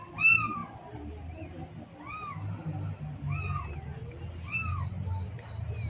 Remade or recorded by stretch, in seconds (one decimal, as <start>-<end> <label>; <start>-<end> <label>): 0.0-0.6 recorded; 0.6-2.0 remade; 2.0-4.0 recorded; 4.0-5.9 remade